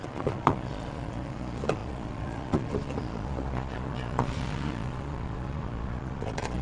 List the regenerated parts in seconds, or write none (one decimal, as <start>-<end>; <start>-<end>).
0.0-6.6